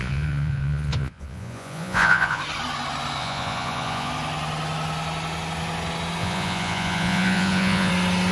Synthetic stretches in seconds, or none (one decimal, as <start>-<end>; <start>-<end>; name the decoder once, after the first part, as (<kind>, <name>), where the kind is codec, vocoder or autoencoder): 0.0-2.4 (vocoder, Vocos); 3.2-4.1; 6.2-7.9